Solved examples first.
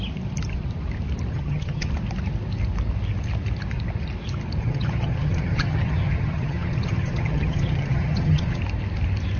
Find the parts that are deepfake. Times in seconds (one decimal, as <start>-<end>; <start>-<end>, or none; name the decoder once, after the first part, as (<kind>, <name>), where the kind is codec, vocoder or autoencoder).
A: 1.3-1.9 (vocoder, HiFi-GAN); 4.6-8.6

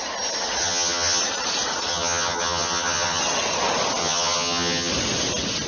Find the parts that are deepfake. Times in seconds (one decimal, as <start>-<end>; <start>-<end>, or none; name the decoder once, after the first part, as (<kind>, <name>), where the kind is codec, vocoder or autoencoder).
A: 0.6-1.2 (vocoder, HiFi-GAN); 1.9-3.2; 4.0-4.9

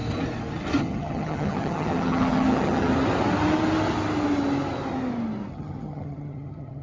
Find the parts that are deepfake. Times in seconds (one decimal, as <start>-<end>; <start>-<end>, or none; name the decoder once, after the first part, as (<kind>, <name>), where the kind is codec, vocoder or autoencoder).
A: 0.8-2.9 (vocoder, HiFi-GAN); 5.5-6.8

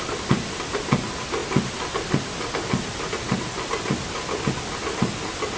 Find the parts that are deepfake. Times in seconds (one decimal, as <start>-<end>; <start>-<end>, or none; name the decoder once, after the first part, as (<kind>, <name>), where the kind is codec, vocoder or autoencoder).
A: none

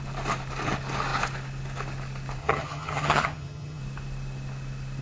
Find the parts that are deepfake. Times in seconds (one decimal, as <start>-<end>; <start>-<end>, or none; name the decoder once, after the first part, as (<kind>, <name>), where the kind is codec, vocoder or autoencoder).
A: 2.4-3.8 (vocoder, HiFi-GAN)

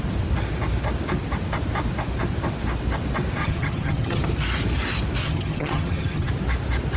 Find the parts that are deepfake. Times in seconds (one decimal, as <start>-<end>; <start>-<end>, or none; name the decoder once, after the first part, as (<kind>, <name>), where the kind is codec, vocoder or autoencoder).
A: 3.4-4.2 (vocoder, HiFi-GAN); 5.2-6.3

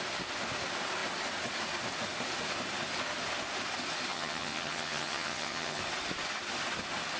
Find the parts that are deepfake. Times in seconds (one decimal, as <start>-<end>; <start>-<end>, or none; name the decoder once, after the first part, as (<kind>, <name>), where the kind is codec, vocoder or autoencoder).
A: 4.1-5.8 (vocoder, HiFi-GAN)